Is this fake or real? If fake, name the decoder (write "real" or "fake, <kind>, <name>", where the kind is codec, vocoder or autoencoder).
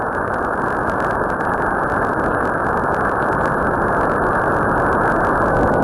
real